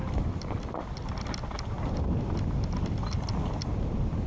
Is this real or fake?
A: real